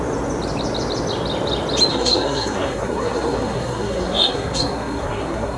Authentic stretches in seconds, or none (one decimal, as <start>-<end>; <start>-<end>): 0.0-1.9

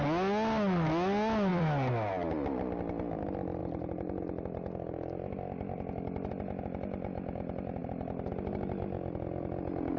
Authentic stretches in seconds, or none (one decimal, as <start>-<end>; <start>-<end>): 0.0-1.5; 2.1-3.6; 6.3-10.0

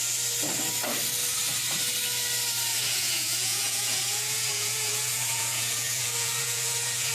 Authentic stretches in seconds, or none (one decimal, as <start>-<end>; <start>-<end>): 0.0-2.7

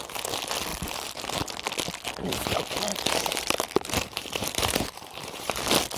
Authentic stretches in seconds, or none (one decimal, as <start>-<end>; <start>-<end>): 0.0-0.7; 1.6-2.9; 5.6-6.0

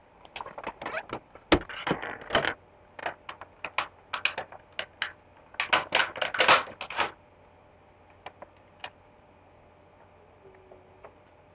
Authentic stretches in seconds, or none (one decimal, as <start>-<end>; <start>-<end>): 0.0-11.5

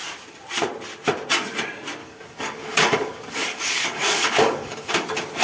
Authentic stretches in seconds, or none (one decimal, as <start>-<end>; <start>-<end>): 0.0-2.0; 4.9-5.4